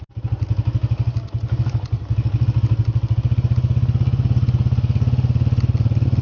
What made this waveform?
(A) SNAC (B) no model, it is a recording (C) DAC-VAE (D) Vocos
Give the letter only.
B